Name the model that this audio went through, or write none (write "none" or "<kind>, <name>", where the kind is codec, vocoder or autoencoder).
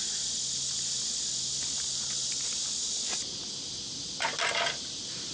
none